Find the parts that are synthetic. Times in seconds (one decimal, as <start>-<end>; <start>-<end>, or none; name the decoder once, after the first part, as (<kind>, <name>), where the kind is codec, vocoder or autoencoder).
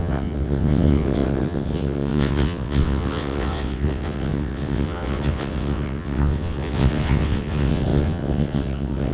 0.0-9.1 (vocoder, WaveNeXt)